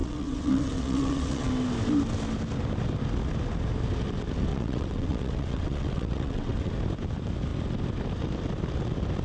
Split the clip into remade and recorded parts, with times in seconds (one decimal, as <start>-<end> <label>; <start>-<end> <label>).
0.0-1.5 remade; 1.5-4.5 recorded; 4.5-6.7 remade; 6.7-9.2 recorded